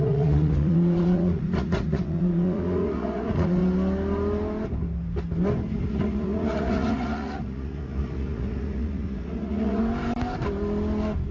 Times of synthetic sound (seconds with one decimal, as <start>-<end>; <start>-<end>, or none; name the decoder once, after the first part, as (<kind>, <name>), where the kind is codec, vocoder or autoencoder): 0.0-3.6 (vocoder, Vocos); 5.9-9.8